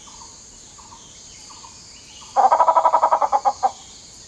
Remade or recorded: recorded